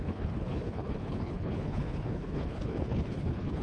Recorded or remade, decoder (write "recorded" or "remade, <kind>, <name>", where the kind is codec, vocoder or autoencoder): remade, codec, HILCodec